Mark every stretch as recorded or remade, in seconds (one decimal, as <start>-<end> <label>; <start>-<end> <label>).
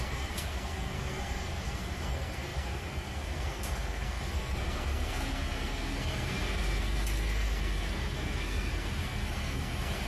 0.0-10.1 remade